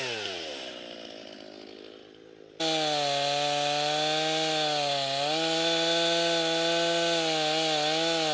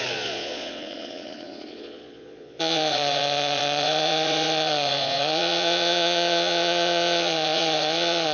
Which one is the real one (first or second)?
first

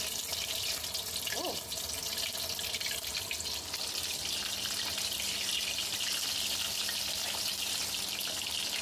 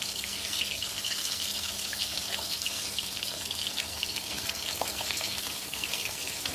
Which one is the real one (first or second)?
first